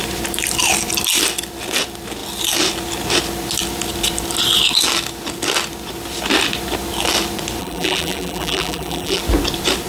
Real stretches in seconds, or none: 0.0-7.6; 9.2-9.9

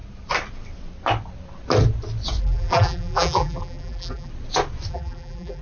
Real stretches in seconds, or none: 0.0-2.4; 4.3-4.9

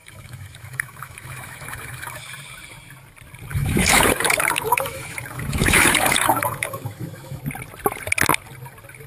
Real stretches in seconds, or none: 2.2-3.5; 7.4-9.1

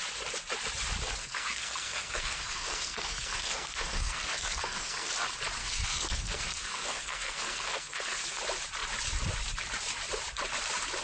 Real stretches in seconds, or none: 0.0-1.2; 5.1-5.6; 8.4-11.0